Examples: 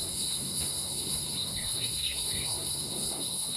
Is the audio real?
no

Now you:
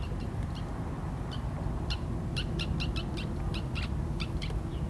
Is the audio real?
yes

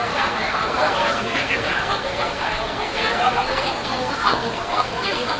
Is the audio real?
no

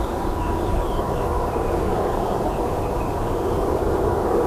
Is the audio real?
no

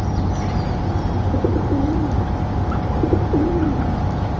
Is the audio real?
yes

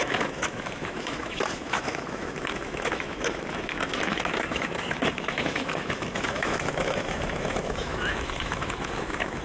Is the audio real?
no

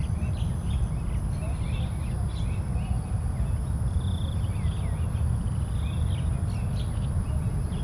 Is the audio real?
yes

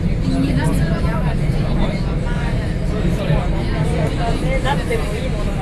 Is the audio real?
yes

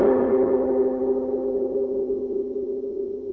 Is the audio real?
no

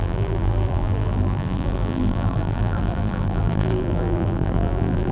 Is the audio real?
no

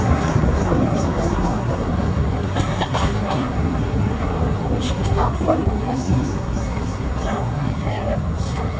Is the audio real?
no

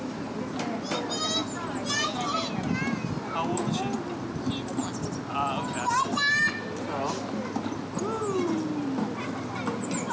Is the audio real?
yes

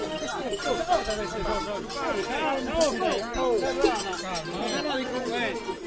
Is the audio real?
yes